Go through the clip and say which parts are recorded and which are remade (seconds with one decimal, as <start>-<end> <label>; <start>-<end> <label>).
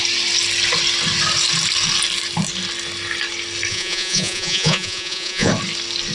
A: 0.0-3.7 recorded; 3.7-5.5 remade; 5.5-6.1 recorded